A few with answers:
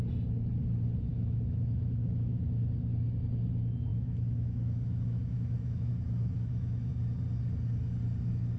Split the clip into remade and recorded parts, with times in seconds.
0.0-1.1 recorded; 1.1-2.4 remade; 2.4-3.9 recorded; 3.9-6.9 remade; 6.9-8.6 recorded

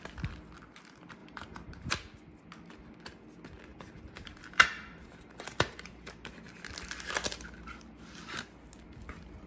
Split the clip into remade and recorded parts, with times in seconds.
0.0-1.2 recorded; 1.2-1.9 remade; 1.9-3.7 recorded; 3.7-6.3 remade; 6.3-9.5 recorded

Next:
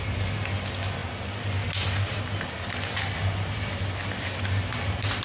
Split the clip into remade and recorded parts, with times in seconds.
0.0-5.2 recorded

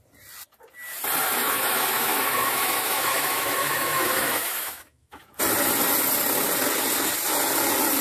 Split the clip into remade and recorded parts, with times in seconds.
0.0-1.3 recorded; 1.3-5.4 remade; 5.4-8.0 recorded

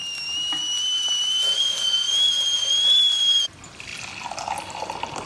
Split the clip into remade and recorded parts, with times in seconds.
0.0-5.3 recorded

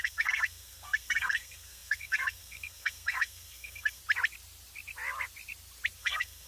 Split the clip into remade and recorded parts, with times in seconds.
0.0-4.0 remade; 4.0-6.0 recorded; 6.0-6.5 remade

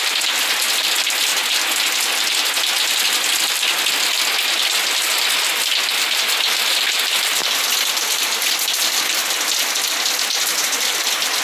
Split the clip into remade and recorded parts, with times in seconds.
0.0-11.4 recorded

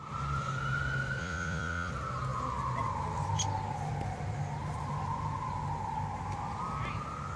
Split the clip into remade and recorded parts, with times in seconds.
0.0-1.2 recorded; 1.2-1.9 remade; 1.9-7.4 recorded